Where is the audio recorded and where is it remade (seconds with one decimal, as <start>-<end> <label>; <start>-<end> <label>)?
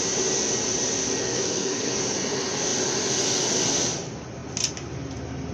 0.0-1.2 recorded; 1.2-2.0 remade; 2.0-5.5 recorded